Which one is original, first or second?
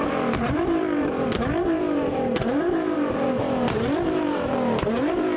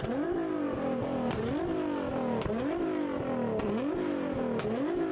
second